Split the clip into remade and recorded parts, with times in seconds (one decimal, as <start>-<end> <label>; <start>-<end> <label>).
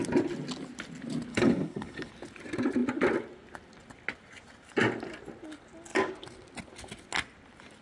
0.0-1.3 recorded; 1.3-2.1 remade; 2.1-7.8 recorded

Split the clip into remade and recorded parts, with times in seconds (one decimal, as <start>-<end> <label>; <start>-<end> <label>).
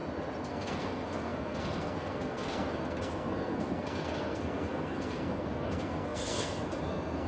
0.0-0.5 recorded; 0.5-7.3 remade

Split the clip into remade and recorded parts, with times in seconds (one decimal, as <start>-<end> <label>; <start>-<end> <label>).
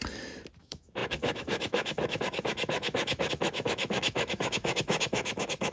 0.0-0.6 recorded; 0.6-5.7 remade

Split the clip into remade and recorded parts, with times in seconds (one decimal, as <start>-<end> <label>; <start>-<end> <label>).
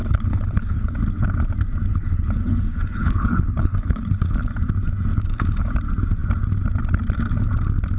0.0-0.9 remade; 0.9-1.9 recorded; 1.9-4.4 remade; 4.4-5.1 recorded; 5.1-5.7 remade; 5.7-8.0 recorded